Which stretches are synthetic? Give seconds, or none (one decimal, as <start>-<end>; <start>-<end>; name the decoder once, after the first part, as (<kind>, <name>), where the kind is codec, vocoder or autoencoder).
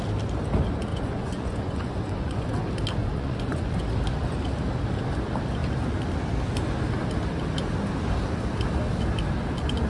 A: 0.9-2.5 (vocoder, Vocos); 3.0-3.8